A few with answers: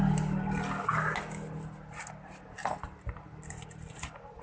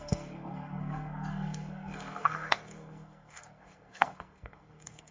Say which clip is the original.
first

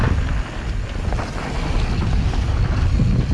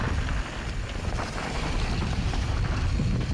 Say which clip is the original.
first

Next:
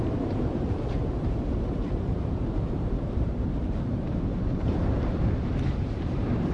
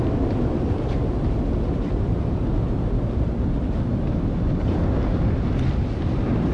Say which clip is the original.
second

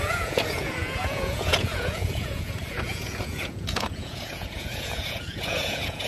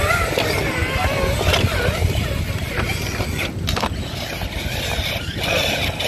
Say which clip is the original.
second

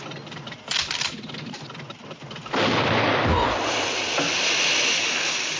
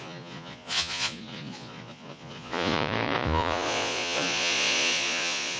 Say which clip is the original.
first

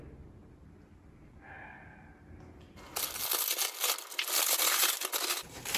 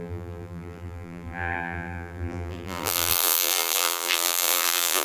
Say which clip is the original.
first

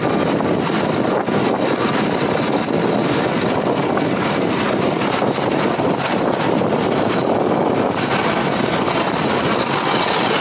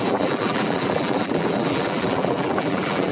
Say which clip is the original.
first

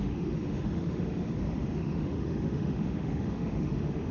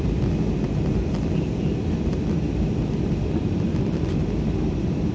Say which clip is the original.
second